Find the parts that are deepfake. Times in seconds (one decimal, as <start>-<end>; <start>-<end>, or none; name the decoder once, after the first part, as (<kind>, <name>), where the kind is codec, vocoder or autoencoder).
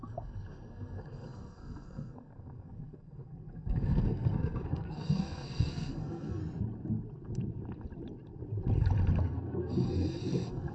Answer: 0.0-6.4 (codec, SNAC); 9.2-10.7